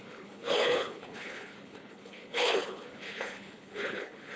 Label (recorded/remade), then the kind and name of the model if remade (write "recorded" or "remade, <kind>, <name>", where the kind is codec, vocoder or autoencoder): remade, codec, HILCodec